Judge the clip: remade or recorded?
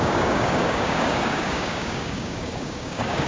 remade